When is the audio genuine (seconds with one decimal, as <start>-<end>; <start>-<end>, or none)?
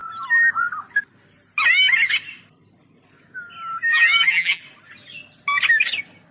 0.0-3.9; 4.6-6.3